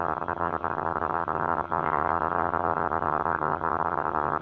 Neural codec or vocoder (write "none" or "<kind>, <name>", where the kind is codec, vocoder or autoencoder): vocoder, HiFi-GAN